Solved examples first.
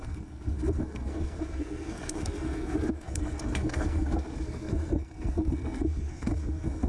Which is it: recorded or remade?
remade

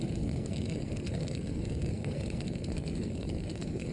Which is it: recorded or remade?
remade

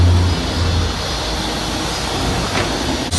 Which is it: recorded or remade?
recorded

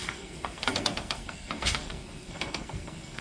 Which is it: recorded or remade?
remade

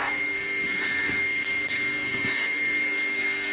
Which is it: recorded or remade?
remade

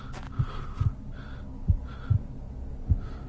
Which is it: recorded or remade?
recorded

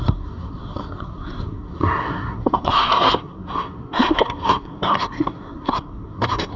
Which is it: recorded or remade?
remade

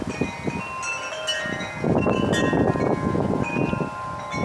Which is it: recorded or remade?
recorded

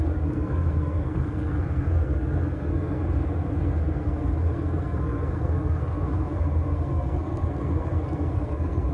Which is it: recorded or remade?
remade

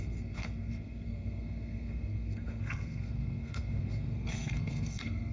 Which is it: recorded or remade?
remade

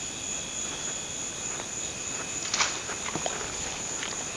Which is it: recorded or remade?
recorded